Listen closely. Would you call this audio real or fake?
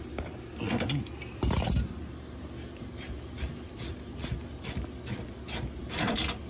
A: real